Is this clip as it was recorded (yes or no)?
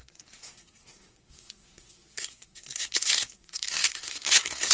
no